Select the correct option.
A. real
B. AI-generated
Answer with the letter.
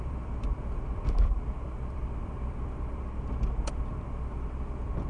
B